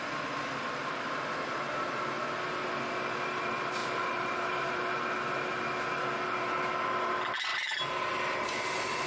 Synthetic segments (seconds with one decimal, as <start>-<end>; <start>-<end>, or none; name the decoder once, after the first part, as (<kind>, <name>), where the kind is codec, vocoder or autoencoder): 3.8-5.0 (vocoder, BigVGAN v2)